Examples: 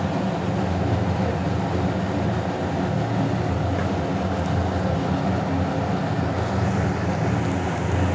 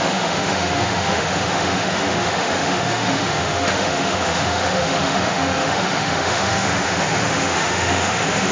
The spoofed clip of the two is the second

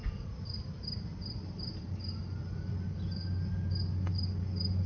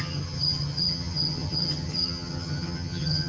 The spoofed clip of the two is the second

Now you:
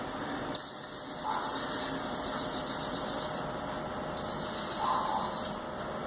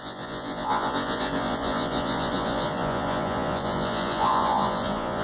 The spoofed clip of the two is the second